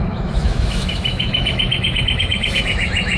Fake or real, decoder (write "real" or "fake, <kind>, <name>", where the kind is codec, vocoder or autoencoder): fake, autoencoder, DAC-VAE